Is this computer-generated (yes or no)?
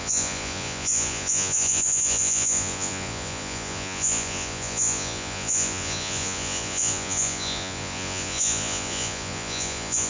yes